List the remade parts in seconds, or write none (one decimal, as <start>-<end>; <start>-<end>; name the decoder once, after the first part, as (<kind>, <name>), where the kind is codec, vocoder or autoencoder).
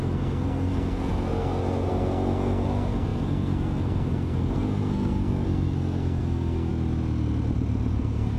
0.0-6.7 (codec, SNAC); 7.9-8.4